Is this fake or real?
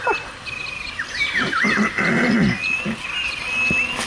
real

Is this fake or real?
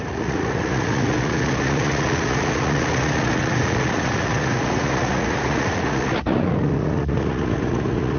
fake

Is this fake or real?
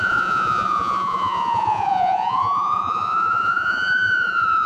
fake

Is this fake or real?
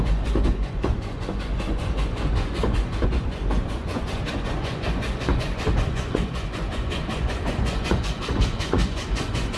fake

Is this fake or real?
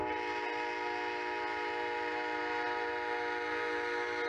real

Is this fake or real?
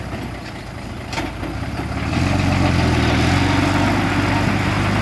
real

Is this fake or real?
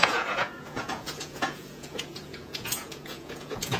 fake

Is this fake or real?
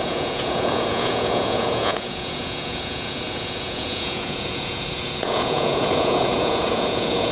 fake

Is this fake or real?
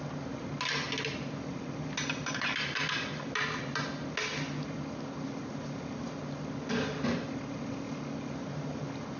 real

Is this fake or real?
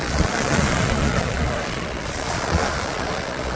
fake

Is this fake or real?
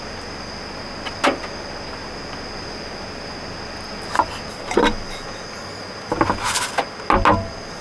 real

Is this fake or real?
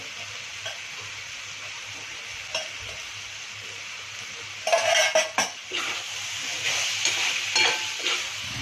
real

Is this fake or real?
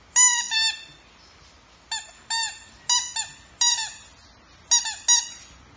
real